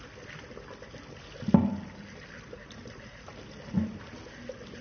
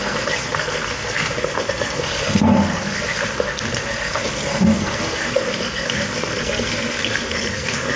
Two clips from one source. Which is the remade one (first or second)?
second